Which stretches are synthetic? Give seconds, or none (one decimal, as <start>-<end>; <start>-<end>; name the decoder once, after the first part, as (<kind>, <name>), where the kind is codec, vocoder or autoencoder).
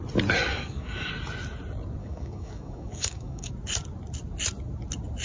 0.5-1.1 (codec, DAC); 2.0-3.5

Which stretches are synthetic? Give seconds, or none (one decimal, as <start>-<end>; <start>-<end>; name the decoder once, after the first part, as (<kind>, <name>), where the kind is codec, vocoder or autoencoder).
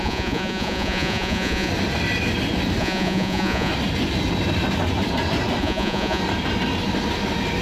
0.0-1.7 (vocoder, Vocos); 2.8-3.7; 5.6-6.2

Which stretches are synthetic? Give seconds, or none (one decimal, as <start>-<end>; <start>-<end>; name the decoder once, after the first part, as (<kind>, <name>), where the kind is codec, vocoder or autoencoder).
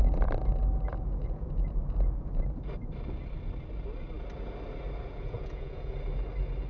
0.9-2.4 (vocoder, Vocos); 5.1-5.9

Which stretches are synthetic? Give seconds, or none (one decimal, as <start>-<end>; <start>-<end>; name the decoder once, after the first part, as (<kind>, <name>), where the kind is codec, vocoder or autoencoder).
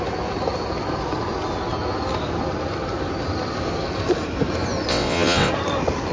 4.9-5.5 (vocoder, WaveNeXt)